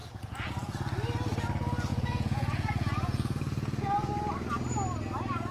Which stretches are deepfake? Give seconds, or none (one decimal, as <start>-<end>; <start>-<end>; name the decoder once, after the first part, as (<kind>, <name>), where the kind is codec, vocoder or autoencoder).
0.0-0.5 (vocoder, Vocos); 1.9-4.1